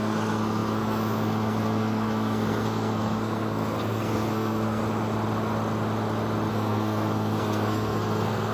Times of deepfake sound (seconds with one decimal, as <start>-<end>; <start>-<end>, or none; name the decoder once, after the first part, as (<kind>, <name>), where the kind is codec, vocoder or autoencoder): 0.0-4.8 (codec, SNAC); 6.5-8.5